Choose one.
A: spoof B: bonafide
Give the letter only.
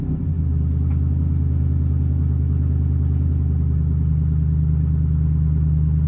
B